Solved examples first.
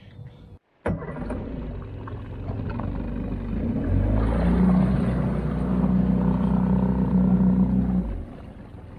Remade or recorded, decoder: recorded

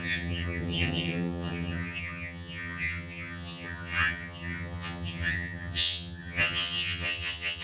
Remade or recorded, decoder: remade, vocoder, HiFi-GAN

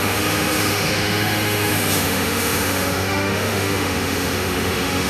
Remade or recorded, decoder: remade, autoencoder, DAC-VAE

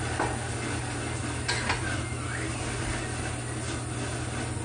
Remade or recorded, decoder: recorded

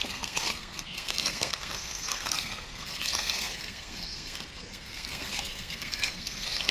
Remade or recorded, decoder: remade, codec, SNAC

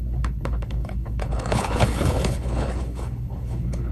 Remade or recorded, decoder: remade, codec, HILCodec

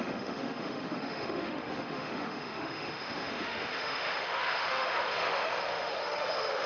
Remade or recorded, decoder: remade, autoencoder, DAC-VAE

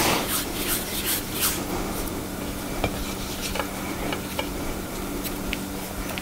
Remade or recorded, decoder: recorded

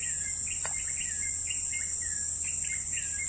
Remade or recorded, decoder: recorded